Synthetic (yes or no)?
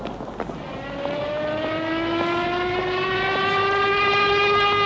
no